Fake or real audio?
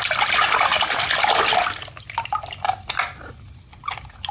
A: real